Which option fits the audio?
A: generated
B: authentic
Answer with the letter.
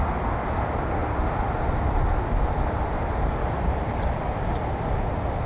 B